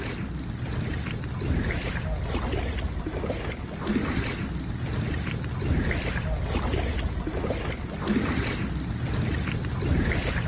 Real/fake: real